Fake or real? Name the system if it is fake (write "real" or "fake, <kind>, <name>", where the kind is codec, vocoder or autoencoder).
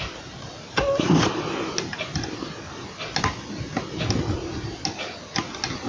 real